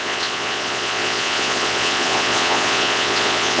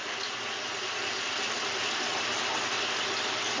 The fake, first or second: first